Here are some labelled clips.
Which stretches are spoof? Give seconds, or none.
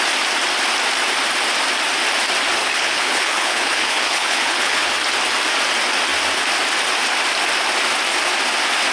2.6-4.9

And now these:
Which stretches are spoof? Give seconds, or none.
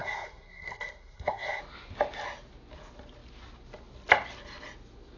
0.0-1.6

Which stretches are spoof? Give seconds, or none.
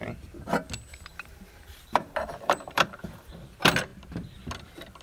1.1-3.3